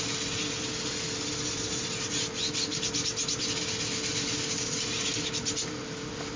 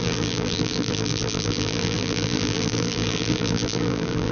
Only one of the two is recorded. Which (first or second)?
first